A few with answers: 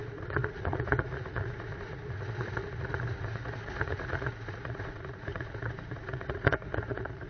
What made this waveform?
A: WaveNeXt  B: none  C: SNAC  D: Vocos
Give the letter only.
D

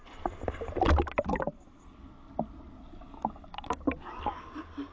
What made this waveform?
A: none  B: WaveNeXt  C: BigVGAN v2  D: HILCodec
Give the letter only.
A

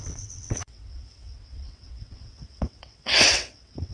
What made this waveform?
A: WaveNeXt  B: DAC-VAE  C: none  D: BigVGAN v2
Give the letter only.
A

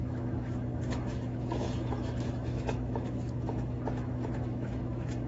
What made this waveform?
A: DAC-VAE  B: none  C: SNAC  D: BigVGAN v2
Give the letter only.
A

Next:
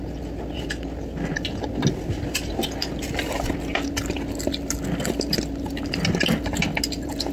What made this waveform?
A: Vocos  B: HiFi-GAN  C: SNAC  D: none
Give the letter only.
D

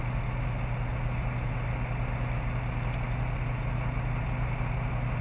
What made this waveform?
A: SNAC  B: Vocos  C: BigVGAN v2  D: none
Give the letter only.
D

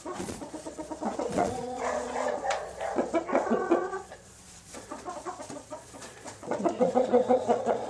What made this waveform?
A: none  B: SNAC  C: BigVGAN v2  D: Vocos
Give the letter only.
D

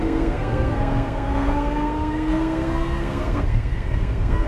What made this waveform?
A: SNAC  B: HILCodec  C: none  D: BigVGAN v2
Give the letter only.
A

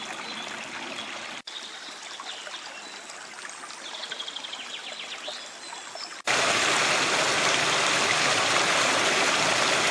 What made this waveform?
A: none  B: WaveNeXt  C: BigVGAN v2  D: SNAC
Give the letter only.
A